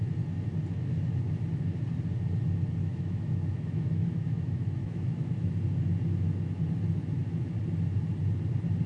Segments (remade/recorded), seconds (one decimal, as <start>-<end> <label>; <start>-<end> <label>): 0.0-2.8 recorded; 2.8-5.5 remade; 5.5-8.9 recorded